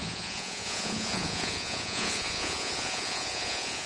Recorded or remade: remade